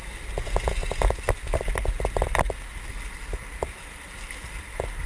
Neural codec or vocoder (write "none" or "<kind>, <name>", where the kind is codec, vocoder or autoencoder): none